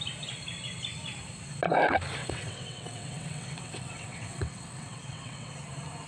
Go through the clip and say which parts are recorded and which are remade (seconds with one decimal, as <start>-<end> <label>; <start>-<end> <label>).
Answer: 0.0-2.2 recorded; 2.2-5.5 remade; 5.5-6.1 recorded